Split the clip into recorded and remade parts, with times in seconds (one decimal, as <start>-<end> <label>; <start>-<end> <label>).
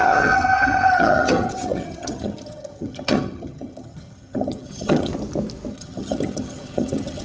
0.0-5.1 remade; 5.1-5.7 recorded; 5.7-7.2 remade